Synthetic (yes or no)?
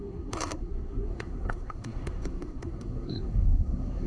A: yes